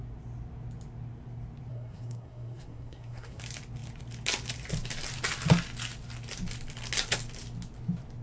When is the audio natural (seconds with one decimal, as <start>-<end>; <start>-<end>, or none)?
0.0-1.7; 3.4-8.2